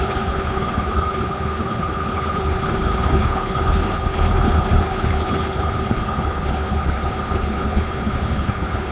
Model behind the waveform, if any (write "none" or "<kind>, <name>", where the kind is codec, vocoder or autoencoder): codec, HILCodec